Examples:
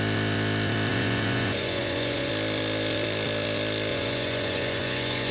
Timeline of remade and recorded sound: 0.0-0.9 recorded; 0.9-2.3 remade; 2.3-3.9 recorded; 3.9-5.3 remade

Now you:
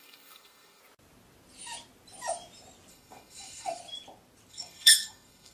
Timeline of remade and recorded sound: 0.0-0.8 remade; 0.8-2.9 recorded; 2.9-3.8 remade; 3.8-4.5 recorded; 4.5-5.5 remade

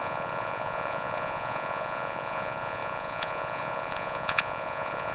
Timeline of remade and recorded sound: 0.0-5.1 remade

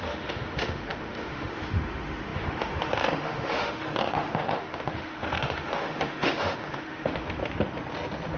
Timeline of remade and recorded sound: 0.0-7.4 remade; 7.4-8.4 recorded

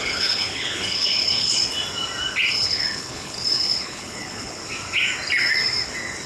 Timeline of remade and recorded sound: 0.0-1.6 remade; 1.6-2.5 recorded; 2.5-4.6 remade; 4.6-6.3 recorded

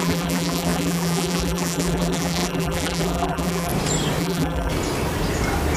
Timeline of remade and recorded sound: 0.0-3.7 remade; 3.7-4.2 recorded; 4.2-4.7 remade; 4.7-5.8 recorded

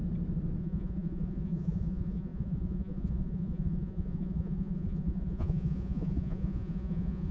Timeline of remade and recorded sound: 0.0-0.6 recorded; 0.6-7.3 remade

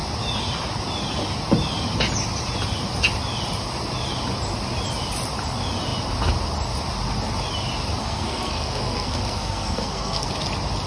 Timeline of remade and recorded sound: 0.0-8.0 recorded; 8.0-10.3 remade; 10.3-10.9 recorded